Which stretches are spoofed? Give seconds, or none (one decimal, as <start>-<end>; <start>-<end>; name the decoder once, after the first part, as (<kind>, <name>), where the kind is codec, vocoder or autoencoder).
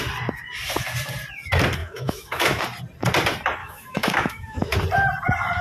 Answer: 1.8-2.6 (autoencoder, DAC-VAE); 3.6-4.8